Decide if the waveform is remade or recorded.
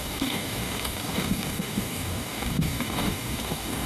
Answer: remade